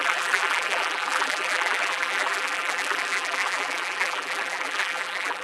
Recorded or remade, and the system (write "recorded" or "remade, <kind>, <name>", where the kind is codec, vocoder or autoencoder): remade, vocoder, BigVGAN v2